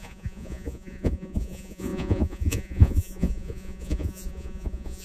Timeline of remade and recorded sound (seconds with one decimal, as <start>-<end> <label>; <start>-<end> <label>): 0.0-5.0 remade